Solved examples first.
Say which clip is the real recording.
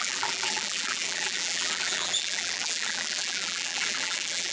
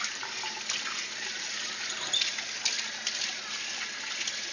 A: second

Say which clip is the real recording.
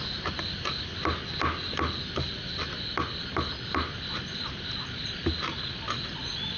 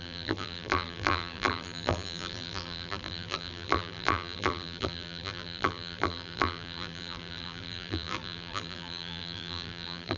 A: first